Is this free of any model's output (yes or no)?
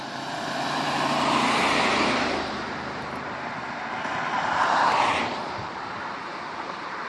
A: no